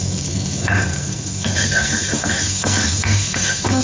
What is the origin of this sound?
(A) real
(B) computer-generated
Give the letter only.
B